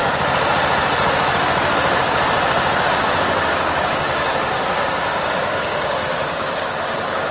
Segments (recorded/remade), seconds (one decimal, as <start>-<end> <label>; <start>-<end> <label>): 0.0-2.9 recorded; 2.9-7.3 remade